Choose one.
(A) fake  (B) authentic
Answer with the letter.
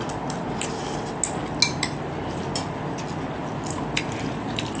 B